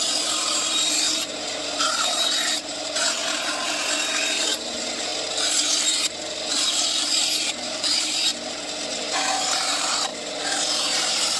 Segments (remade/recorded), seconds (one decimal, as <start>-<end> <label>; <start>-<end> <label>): 0.0-3.2 remade; 3.2-4.4 recorded; 4.4-5.1 remade; 5.1-6.5 recorded; 6.5-8.3 remade; 8.3-9.0 recorded; 9.0-10.1 remade; 10.1-10.6 recorded; 10.6-11.4 remade

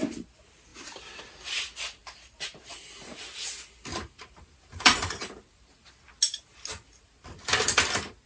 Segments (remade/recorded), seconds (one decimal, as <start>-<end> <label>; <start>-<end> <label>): 0.0-0.7 recorded; 0.7-1.2 remade; 1.2-2.0 recorded; 2.0-2.6 remade; 2.6-3.9 recorded; 3.9-5.9 remade; 5.9-8.3 recorded

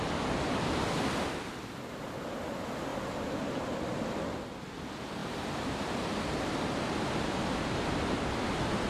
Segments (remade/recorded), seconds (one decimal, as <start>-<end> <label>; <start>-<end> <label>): 0.0-2.9 recorded; 2.9-3.7 remade; 3.7-5.2 recorded; 5.2-5.8 remade; 5.8-8.9 recorded

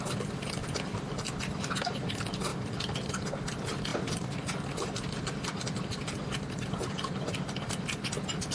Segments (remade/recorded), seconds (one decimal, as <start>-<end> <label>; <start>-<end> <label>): 0.0-0.6 recorded; 0.6-1.7 remade; 1.7-2.5 recorded; 2.5-3.1 remade; 3.1-8.5 recorded

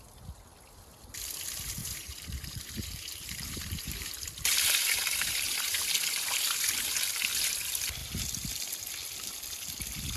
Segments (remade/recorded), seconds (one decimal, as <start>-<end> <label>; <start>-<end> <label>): 0.0-1.8 recorded; 1.8-5.8 remade; 5.8-10.2 recorded

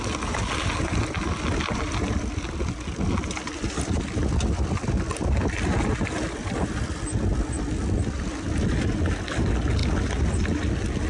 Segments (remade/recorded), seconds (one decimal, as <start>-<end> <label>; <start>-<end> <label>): 0.0-11.1 recorded